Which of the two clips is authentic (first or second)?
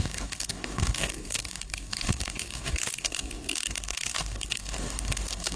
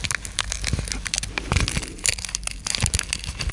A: second